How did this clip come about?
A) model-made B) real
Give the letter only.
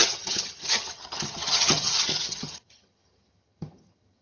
A